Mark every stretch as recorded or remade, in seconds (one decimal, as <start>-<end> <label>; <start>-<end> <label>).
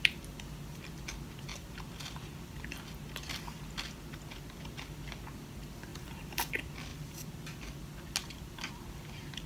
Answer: 0.0-5.9 recorded; 5.9-6.5 remade; 6.5-9.5 recorded